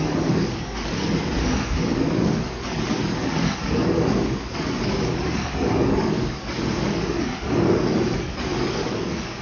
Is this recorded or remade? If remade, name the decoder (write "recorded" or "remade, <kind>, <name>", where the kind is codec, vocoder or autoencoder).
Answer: remade, codec, DAC